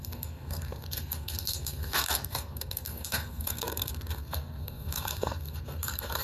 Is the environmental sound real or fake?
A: fake